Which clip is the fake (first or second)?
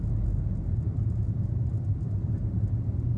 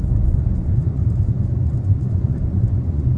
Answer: second